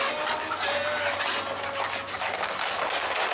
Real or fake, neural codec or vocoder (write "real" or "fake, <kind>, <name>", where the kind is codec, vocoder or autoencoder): real